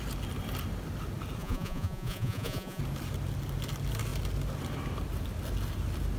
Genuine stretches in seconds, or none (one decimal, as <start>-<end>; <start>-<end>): 0.0-1.4; 2.8-6.2